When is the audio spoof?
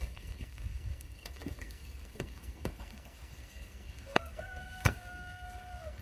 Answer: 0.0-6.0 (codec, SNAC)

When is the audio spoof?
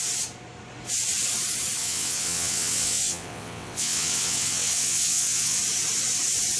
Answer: 1.8-5.6 (vocoder, WaveNeXt)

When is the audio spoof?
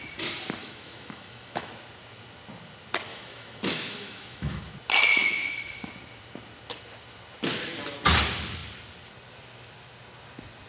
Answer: 0.6-1.7 (autoencoder, DAC-VAE); 3.1-4.6; 5.2-5.9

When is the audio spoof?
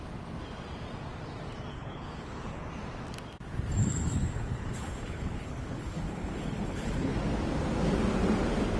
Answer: 1.7-2.6 (codec, HILCodec); 3.8-7.1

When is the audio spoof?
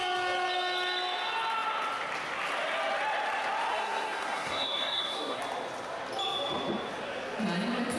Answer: 3.7-5.4 (codec, SNAC)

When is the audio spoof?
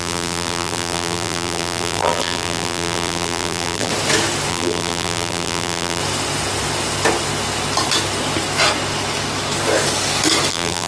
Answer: 0.0-3.9 (vocoder, BigVGAN v2); 4.5-6.0; 10.5-10.9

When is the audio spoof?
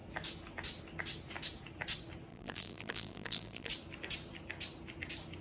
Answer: 2.3-3.7 (vocoder, BigVGAN v2)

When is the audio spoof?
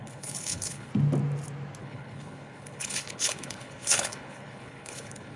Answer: 0.0-0.9 (codec, HILCodec); 1.8-5.4